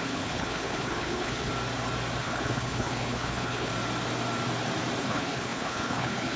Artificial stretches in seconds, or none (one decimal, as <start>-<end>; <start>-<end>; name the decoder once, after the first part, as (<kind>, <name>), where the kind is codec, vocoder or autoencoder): 0.0-1.5 (codec, HILCodec); 2.2-3.7; 5.0-6.4